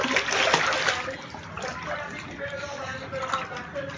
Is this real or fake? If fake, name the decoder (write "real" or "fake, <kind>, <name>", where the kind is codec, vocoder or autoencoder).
real